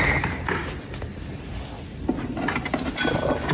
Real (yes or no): yes